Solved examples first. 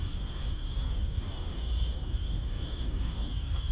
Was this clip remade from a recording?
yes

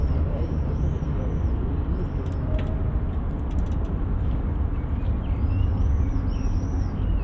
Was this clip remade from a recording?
no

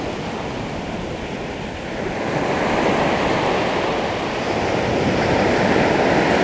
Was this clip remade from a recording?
no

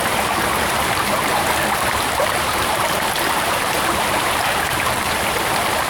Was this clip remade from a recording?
yes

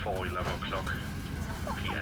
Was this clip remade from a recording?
no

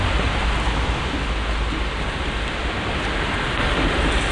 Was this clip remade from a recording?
no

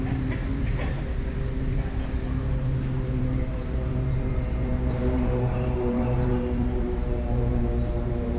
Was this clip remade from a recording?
yes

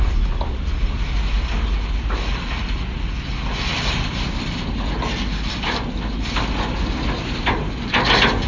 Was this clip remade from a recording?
no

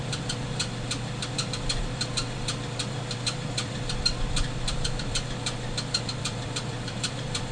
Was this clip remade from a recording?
yes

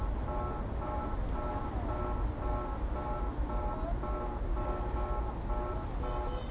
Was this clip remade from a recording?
no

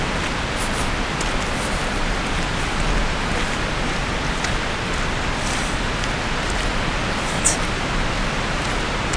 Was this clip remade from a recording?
no